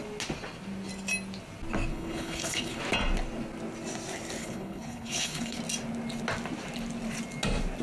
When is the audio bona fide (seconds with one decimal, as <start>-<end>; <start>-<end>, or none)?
0.0-1.9; 2.8-4.4; 5.6-7.8